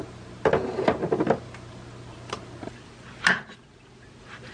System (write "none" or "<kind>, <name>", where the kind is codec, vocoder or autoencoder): none